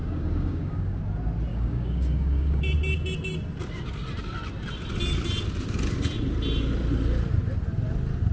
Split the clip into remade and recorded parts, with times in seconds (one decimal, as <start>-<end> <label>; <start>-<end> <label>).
0.0-1.0 remade; 1.0-1.5 recorded; 1.5-2.6 remade; 2.6-8.3 recorded